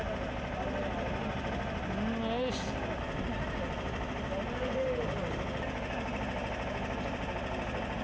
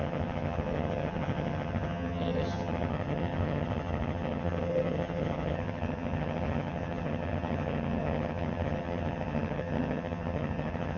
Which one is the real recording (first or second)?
first